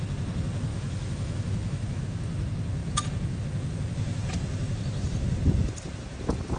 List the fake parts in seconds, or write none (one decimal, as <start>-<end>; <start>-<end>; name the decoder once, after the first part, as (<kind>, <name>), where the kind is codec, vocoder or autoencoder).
0.7-2.0 (autoencoder, DAC-VAE)